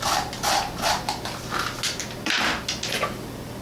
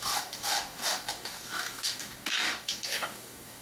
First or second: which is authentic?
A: first